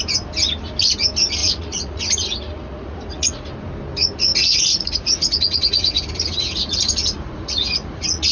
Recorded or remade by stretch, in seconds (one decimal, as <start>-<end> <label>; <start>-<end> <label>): 0.0-1.4 recorded; 1.4-3.5 remade; 3.5-4.3 recorded; 4.3-8.3 remade